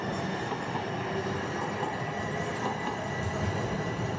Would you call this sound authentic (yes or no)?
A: yes